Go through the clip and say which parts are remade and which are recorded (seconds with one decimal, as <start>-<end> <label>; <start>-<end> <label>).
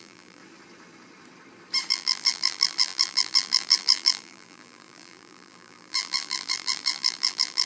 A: 0.0-0.4 remade; 0.4-1.9 recorded; 1.9-7.7 remade